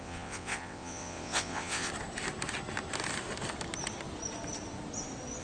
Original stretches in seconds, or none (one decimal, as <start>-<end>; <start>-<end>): 1.9-5.4